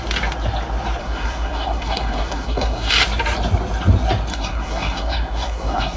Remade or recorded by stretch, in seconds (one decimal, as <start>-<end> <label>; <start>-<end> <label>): 0.0-1.0 recorded; 1.0-2.9 remade; 2.9-4.3 recorded; 4.3-6.0 remade